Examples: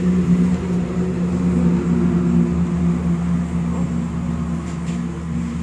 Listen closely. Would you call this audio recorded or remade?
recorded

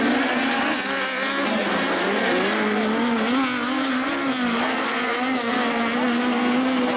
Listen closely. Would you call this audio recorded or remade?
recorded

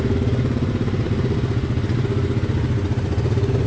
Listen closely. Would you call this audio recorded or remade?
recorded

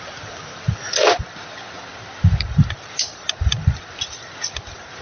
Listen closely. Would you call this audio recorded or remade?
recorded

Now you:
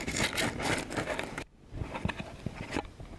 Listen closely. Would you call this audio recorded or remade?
recorded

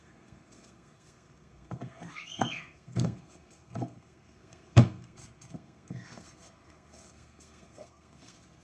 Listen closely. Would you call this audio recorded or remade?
remade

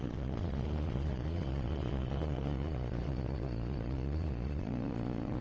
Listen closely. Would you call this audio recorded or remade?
remade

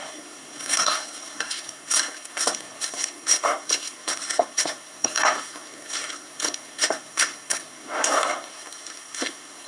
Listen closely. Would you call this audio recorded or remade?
remade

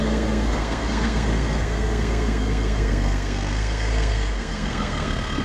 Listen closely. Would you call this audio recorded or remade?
remade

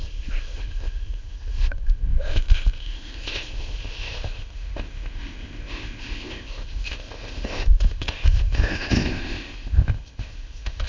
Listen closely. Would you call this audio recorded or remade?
remade